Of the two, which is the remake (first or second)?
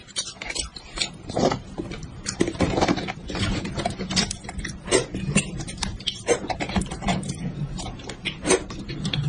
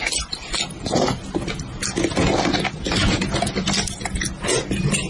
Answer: first